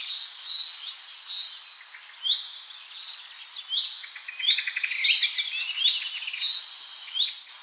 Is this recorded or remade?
recorded